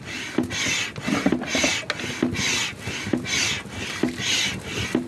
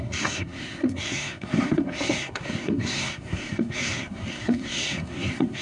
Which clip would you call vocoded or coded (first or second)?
second